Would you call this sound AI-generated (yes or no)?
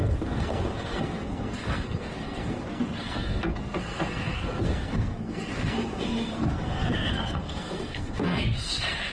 yes